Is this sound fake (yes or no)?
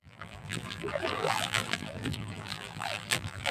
yes